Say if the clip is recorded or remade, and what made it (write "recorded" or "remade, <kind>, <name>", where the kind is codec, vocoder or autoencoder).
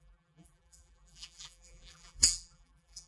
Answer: remade, vocoder, BigVGAN v2